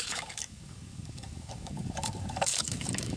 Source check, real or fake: fake